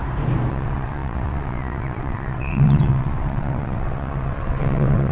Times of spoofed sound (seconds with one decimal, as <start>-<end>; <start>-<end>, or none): 0.5-5.1